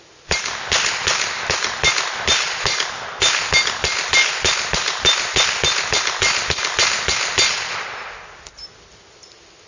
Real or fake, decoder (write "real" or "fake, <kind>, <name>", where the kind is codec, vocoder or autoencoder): real